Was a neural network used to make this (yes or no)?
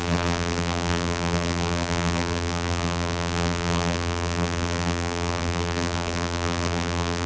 yes